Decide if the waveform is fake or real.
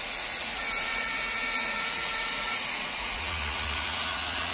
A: fake